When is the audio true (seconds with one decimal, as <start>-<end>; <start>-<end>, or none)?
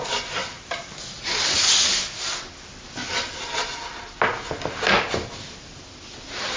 0.0-0.4; 1.2-6.6